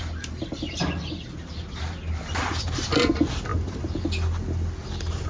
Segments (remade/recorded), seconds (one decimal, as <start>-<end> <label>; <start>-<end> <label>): 0.0-5.3 recorded